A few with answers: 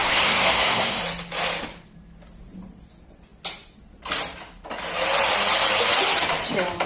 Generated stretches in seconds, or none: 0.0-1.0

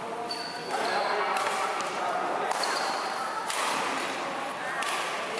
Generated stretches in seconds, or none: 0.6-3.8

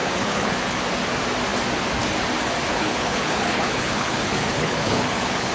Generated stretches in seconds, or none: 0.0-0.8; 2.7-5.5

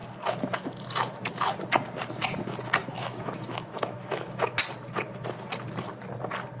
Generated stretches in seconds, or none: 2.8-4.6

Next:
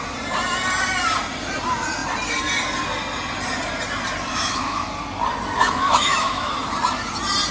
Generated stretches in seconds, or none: 4.3-4.9; 5.6-6.5